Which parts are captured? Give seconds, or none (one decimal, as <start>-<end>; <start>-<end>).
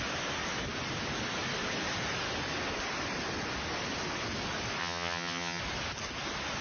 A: 0.0-4.8; 5.6-6.6